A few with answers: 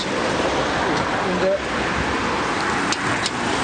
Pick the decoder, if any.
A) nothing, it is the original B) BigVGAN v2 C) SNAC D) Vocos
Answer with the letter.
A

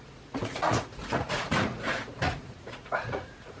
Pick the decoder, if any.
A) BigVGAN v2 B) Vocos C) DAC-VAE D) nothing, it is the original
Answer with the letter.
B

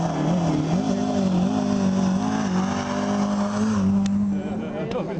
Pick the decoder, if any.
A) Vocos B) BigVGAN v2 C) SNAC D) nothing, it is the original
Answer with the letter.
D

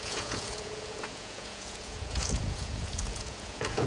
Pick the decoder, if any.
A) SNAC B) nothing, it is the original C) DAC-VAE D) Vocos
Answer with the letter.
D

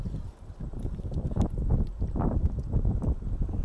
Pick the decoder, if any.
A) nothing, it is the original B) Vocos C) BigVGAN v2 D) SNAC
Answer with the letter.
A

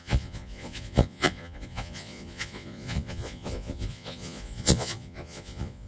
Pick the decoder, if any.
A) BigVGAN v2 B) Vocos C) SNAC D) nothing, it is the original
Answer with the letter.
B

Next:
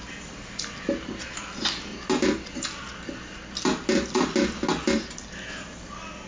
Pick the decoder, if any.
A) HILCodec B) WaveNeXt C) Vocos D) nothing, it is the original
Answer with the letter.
D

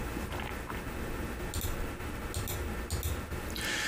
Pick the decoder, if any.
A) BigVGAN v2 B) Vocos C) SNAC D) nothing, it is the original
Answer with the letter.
D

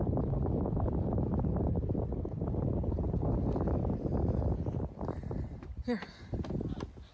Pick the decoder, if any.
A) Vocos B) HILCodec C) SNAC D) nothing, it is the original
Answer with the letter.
D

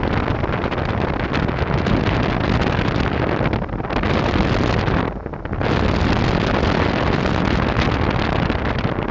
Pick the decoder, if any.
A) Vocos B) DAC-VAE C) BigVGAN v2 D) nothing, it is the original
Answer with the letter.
D